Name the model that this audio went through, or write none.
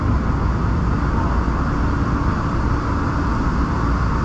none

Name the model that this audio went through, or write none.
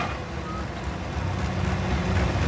none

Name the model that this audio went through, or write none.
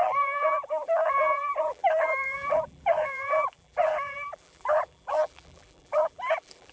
vocoder, BigVGAN v2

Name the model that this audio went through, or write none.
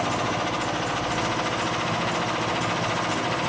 none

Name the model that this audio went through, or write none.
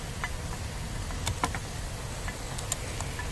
none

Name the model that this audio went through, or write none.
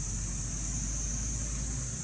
none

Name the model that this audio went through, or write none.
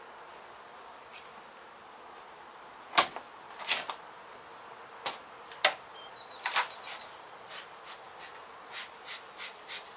none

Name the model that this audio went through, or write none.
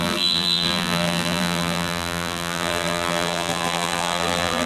vocoder, BigVGAN v2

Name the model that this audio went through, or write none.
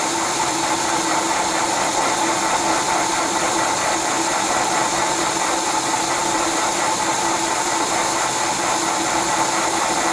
vocoder, BigVGAN v2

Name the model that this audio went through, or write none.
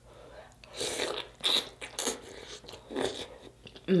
none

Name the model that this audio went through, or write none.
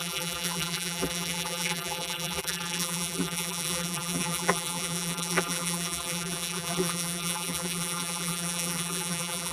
vocoder, BigVGAN v2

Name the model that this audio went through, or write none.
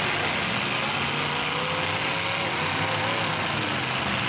none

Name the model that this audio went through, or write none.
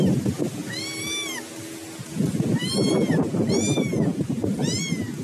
none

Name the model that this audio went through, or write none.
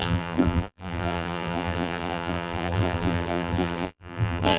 vocoder, BigVGAN v2